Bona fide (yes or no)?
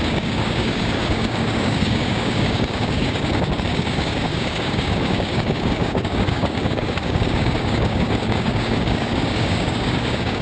no